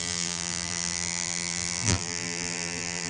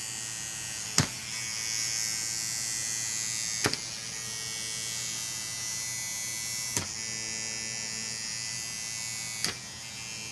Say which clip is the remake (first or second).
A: first